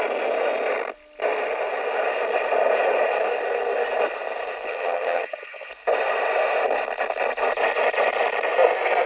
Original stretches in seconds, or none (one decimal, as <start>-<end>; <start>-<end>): 0.0-4.7; 5.7-9.1